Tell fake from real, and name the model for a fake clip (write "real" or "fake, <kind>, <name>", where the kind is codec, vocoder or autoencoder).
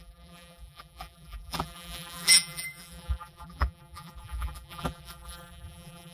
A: fake, vocoder, BigVGAN v2